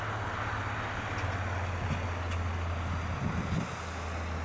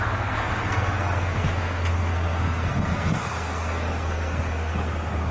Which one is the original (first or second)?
first